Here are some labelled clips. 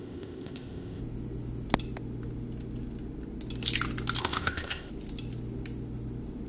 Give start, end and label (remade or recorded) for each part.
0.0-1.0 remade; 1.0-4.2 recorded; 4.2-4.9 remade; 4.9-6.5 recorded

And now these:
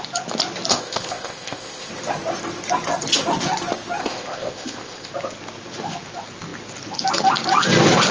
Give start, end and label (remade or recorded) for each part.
0.0-0.7 recorded; 0.7-1.9 remade; 1.9-4.0 recorded; 4.0-5.1 remade; 5.1-8.1 recorded